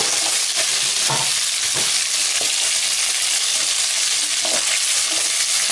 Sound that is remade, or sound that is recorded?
recorded